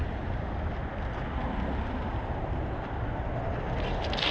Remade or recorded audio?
recorded